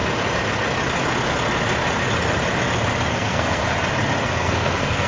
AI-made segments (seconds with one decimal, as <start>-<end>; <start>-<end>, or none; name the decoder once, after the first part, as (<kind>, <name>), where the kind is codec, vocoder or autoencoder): 3.1-3.6 (codec, SNAC); 4.2-5.1